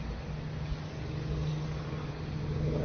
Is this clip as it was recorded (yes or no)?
yes